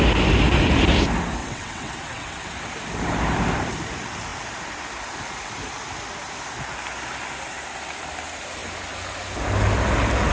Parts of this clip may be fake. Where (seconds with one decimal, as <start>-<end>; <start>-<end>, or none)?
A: 1.4-2.7